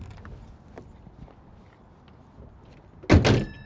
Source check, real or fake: real